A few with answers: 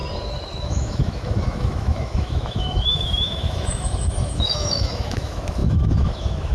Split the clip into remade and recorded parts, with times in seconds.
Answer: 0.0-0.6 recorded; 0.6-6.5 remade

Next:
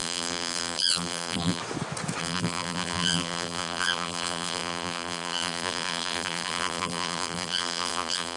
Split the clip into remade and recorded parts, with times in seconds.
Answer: 0.0-1.6 remade; 1.6-2.2 recorded; 2.2-8.4 remade